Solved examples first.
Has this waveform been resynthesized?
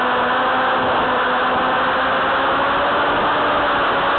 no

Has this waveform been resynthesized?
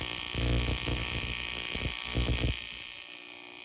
no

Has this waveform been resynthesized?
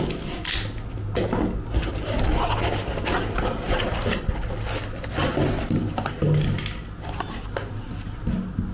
no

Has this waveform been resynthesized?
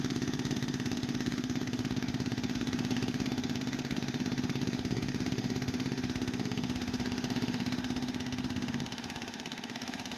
yes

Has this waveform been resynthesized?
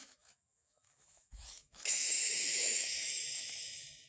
yes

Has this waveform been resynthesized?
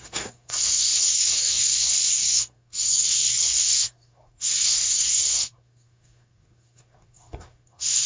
yes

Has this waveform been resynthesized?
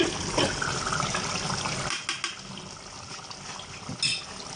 no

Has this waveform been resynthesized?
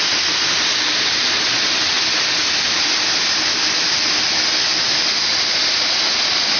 no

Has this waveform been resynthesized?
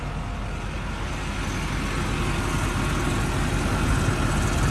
no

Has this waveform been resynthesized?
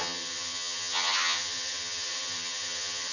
yes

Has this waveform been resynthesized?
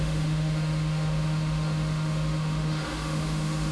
yes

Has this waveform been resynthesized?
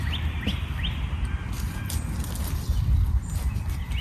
no